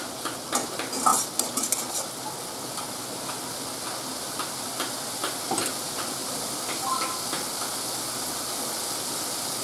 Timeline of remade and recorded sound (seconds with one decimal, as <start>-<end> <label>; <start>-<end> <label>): 0.0-6.2 recorded; 6.2-7.0 remade; 7.0-9.6 recorded